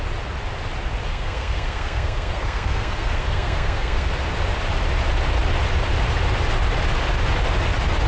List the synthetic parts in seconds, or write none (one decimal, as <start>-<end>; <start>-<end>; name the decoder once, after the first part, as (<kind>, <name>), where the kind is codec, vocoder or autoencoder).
1.1-4.1 (codec, SNAC)